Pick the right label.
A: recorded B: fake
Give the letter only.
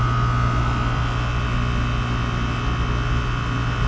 A